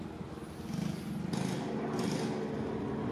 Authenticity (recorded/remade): recorded